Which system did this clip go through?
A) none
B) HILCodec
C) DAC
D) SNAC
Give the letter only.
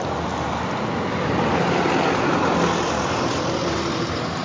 A